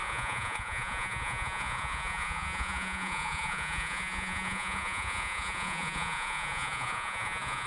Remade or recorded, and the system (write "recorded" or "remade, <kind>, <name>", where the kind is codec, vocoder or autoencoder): remade, vocoder, Vocos